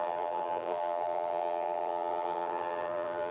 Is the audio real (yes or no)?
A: no